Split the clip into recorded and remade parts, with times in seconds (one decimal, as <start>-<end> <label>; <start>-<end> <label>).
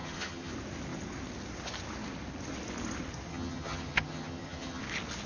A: 0.0-0.5 remade; 0.5-3.3 recorded; 3.3-4.8 remade; 4.8-5.3 recorded